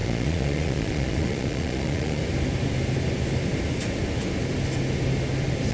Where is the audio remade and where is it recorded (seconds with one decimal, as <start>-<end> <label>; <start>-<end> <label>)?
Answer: 0.0-2.2 remade; 2.2-5.7 recorded